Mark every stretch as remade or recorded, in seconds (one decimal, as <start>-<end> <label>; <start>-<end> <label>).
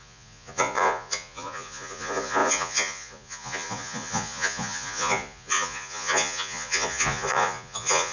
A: 0.0-8.1 remade